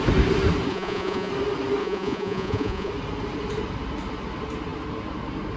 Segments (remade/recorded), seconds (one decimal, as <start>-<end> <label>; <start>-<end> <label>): 0.0-0.7 recorded; 0.7-1.3 remade; 1.3-1.8 recorded; 1.8-2.9 remade; 2.9-5.6 recorded